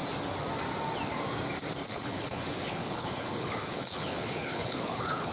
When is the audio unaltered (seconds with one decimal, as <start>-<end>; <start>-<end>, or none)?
0.0-1.9